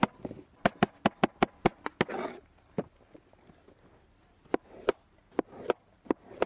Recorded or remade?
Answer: recorded